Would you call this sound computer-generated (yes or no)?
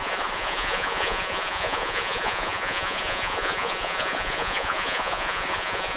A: yes